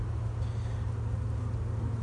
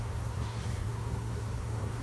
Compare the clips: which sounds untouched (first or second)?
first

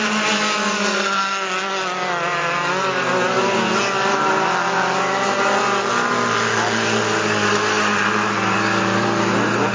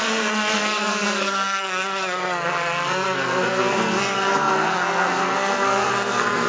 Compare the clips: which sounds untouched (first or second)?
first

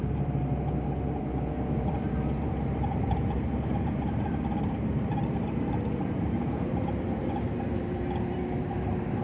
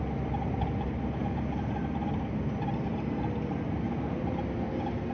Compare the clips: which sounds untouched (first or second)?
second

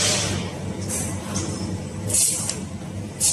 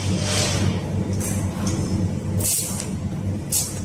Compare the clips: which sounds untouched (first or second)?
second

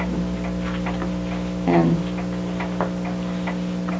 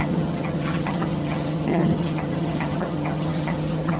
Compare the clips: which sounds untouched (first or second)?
first